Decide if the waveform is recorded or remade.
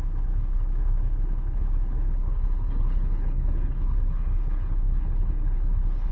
remade